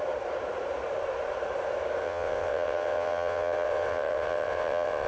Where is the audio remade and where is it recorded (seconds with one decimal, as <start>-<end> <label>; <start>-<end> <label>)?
0.0-2.0 recorded; 2.0-5.1 remade